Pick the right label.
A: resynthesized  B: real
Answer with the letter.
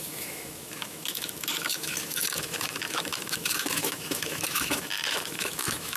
A